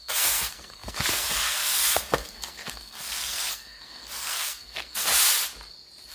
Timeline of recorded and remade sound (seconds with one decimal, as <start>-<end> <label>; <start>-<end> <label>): 0.0-5.1 remade; 5.1-6.1 recorded